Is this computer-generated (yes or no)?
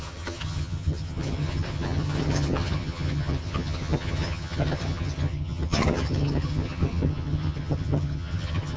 yes